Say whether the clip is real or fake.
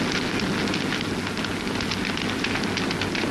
real